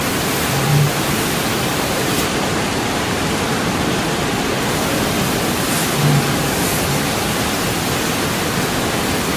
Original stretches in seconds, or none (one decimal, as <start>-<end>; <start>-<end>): 0.0-1.7; 4.0-9.4